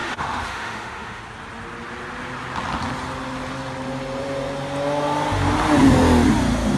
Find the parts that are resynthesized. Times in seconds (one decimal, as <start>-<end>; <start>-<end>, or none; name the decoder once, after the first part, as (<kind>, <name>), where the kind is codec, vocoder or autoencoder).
0.0-1.2 (autoencoder, DAC-VAE)

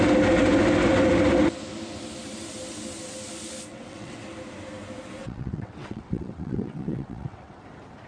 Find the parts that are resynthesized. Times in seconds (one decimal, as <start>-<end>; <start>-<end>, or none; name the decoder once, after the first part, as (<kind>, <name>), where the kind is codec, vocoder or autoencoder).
3.7-4.2 (vocoder, WaveNeXt); 5.2-7.6

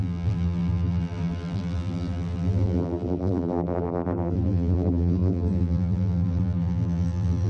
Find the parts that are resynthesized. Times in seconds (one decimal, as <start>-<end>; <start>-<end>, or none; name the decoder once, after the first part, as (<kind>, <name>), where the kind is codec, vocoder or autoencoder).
0.0-7.5 (vocoder, BigVGAN v2)

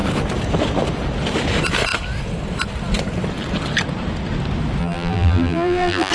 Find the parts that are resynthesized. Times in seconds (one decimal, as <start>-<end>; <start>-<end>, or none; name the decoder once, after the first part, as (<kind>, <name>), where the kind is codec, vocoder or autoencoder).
4.8-6.1 (vocoder, BigVGAN v2)

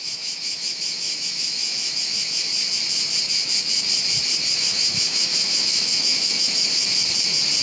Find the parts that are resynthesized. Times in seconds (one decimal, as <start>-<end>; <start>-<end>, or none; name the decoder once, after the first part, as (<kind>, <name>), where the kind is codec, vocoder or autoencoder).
0.0-2.5 (autoencoder, DAC-VAE); 4.5-6.8

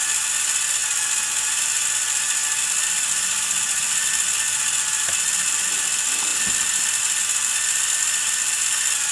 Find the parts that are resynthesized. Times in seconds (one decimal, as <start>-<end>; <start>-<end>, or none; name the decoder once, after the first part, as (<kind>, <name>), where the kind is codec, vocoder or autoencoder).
none